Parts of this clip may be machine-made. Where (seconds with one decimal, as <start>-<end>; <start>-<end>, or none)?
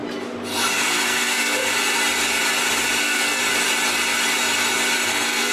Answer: 0.7-1.7; 3.0-3.4; 5.1-5.5